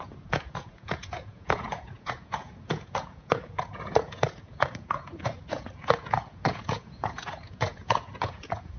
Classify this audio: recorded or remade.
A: remade